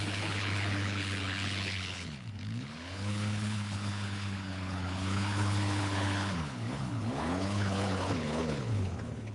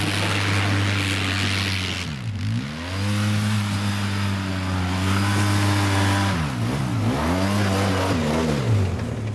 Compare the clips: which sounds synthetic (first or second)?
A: first